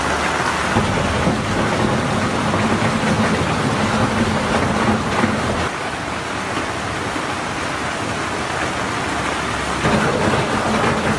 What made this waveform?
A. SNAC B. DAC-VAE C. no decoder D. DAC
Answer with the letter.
C